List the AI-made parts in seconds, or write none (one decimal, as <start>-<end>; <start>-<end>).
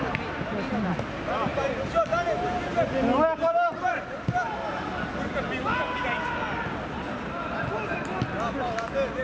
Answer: none